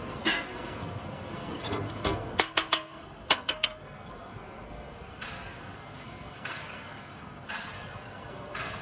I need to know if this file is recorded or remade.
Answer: remade